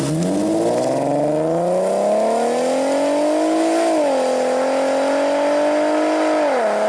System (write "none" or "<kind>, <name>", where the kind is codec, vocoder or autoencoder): none